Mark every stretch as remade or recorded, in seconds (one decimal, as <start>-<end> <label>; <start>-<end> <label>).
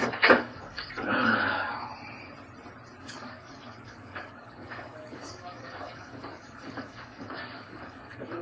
0.0-1.9 remade; 1.9-3.0 recorded; 3.0-8.4 remade